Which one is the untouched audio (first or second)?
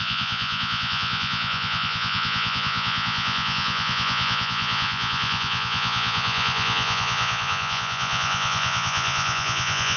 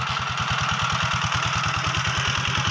second